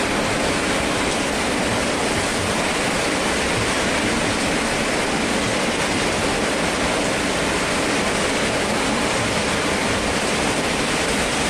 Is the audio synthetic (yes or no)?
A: yes